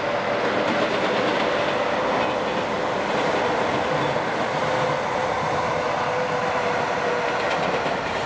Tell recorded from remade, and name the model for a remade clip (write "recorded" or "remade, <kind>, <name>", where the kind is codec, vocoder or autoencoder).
recorded